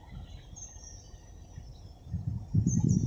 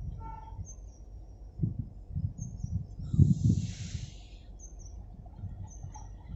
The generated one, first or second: first